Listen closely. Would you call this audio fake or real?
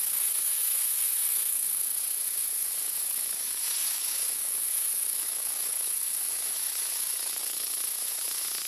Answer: fake